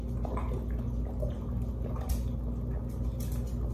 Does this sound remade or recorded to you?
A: recorded